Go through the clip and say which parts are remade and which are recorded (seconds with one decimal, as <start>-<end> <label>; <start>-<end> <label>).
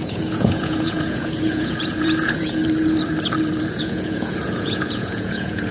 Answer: 0.0-2.6 remade; 2.6-3.6 recorded; 3.6-5.7 remade